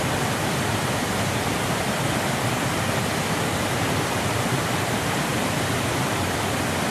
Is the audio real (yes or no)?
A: yes